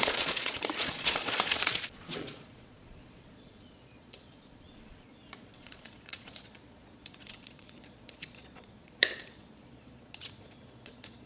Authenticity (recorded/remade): remade